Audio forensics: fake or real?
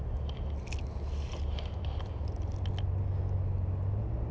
real